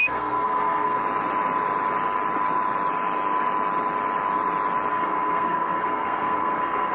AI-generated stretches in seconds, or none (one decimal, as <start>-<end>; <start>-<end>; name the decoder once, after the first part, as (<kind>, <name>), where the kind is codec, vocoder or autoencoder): 0.0-1.0 (codec, SNAC); 4.9-6.9